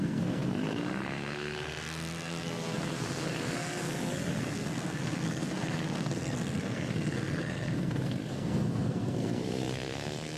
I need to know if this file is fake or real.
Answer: fake